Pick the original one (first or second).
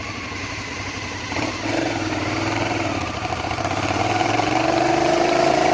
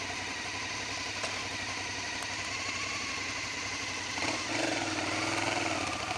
second